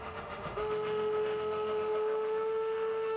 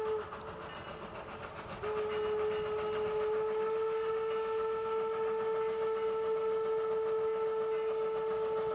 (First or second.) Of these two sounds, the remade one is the first